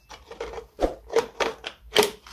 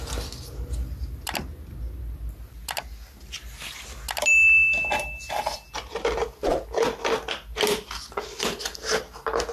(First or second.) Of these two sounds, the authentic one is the second